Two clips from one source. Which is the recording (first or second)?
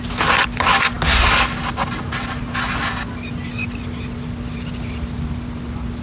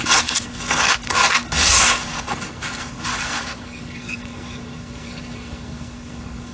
first